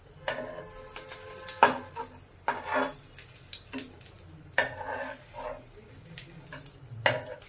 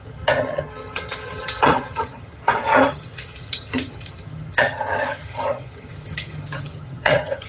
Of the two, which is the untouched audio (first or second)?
first